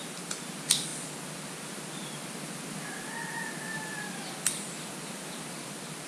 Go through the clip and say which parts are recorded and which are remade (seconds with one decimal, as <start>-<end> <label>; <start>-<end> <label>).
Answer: 0.0-6.1 recorded